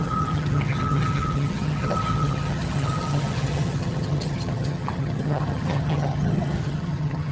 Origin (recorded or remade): remade